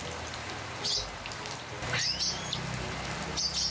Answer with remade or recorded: recorded